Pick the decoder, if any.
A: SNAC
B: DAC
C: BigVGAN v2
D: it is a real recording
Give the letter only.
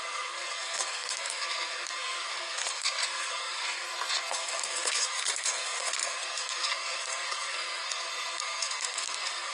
A